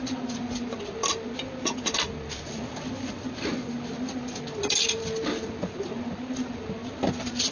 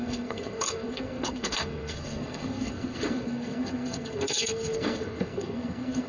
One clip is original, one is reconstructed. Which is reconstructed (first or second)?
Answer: second